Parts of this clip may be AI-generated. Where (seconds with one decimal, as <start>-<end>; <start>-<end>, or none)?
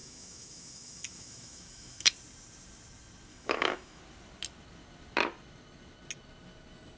0.0-2.1; 3.3-4.0